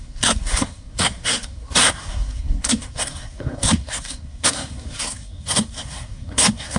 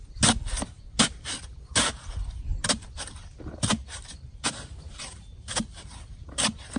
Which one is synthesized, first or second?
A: first